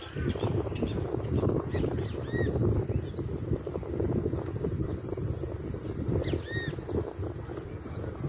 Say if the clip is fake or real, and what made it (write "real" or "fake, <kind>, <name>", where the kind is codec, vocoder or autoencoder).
real